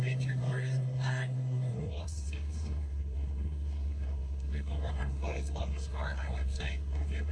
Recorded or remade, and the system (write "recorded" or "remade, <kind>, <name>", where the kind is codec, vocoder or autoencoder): remade, codec, SNAC